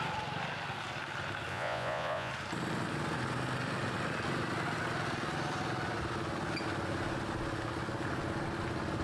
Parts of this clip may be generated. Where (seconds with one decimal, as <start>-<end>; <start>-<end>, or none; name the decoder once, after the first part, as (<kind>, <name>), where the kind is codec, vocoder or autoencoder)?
1.5-2.3 (vocoder, Vocos)